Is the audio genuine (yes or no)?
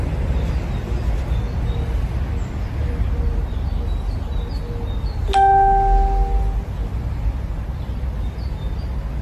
yes